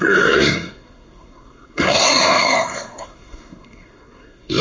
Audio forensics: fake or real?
fake